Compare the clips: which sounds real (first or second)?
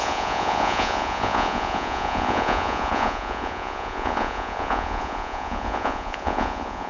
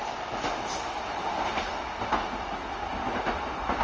second